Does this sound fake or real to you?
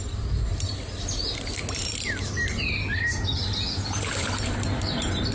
real